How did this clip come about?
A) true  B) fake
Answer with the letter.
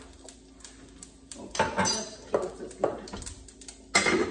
A